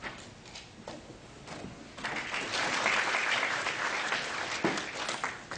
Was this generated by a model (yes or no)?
no